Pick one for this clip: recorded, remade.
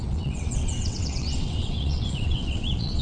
remade